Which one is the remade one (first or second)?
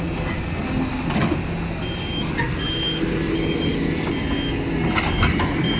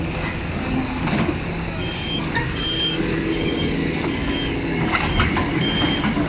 second